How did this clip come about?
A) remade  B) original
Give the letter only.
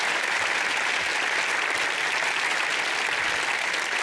B